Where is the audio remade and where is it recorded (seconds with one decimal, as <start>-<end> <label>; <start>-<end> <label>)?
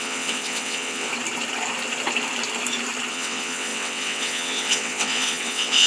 0.0-1.1 remade; 1.1-3.1 recorded; 3.1-5.9 remade